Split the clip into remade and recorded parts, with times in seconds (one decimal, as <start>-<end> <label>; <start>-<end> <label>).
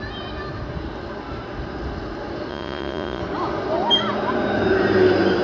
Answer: 0.0-2.5 recorded; 2.5-3.2 remade; 3.2-5.4 recorded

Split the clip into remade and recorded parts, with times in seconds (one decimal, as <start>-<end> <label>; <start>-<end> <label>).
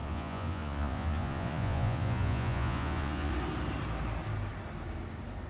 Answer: 0.0-3.3 remade; 3.3-5.5 recorded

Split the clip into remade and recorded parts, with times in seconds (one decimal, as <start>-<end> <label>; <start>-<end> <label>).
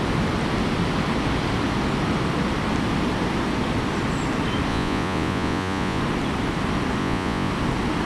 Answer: 0.0-4.7 recorded; 4.7-6.0 remade; 6.0-7.0 recorded; 7.0-7.5 remade; 7.5-8.1 recorded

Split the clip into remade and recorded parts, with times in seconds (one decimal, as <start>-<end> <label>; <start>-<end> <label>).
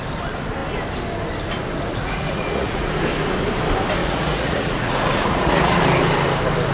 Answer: 0.0-1.9 recorded; 1.9-2.9 remade; 2.9-4.0 recorded; 4.0-5.8 remade; 5.8-6.7 recorded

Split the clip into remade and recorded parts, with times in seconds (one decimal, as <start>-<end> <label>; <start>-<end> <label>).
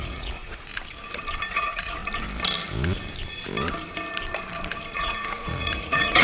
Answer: 0.0-0.7 remade; 0.7-1.5 recorded; 1.5-2.0 remade; 2.0-4.9 recorded; 4.9-6.2 remade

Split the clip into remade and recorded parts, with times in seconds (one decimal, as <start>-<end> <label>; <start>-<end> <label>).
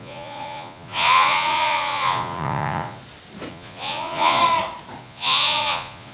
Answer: 0.0-3.0 remade; 3.0-3.5 recorded; 3.5-4.4 remade; 4.4-5.0 recorded; 5.0-6.1 remade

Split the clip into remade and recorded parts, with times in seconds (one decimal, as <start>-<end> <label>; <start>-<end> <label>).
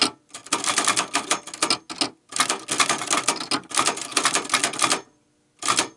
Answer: 0.0-6.0 recorded